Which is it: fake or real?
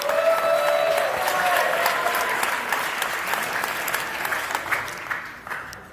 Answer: real